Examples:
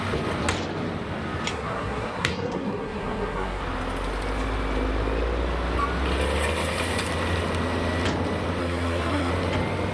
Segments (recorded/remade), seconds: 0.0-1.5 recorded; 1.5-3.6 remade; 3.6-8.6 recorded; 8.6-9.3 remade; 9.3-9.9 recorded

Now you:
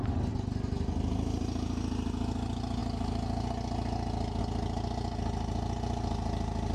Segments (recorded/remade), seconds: 0.0-6.7 recorded

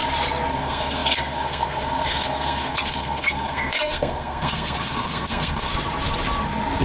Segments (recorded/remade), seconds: 0.0-0.5 recorded; 0.5-5.7 remade; 5.7-6.8 recorded

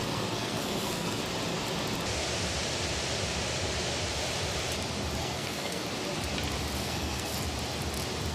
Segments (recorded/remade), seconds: 0.0-1.2 remade; 1.2-5.2 recorded; 5.2-5.8 remade; 5.8-6.8 recorded; 6.8-7.3 remade; 7.3-8.3 recorded

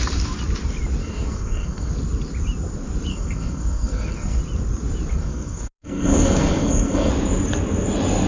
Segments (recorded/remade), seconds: 0.0-1.0 recorded; 1.0-1.9 remade; 1.9-3.1 recorded; 3.1-4.4 remade; 4.4-5.1 recorded; 5.1-7.1 remade; 7.1-8.3 recorded

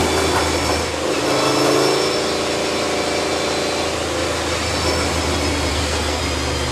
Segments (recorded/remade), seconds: 0.0-5.7 recorded; 5.7-6.2 remade; 6.2-6.7 recorded

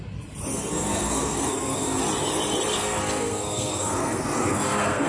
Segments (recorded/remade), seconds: 0.0-0.5 recorded; 0.5-2.0 remade; 2.0-2.7 recorded; 2.7-5.1 remade